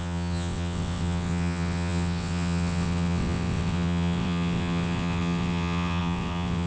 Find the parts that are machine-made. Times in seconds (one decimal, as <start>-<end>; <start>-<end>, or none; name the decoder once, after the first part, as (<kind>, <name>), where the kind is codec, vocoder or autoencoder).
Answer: 0.0-6.7 (vocoder, WaveNeXt)